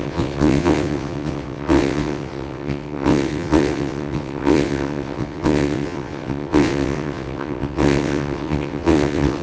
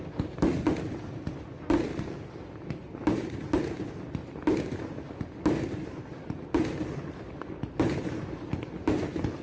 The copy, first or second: first